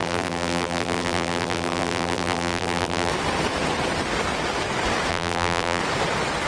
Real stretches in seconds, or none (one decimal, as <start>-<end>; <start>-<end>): 3.1-5.1; 5.8-6.5